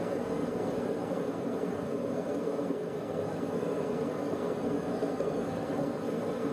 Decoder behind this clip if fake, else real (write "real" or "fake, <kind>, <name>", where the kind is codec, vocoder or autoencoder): fake, codec, SNAC